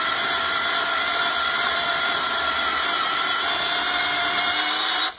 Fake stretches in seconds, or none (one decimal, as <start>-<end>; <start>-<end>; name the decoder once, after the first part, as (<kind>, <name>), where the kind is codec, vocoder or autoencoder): none